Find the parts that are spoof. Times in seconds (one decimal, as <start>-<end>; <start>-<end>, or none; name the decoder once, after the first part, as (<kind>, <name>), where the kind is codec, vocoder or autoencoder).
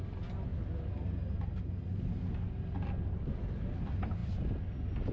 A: none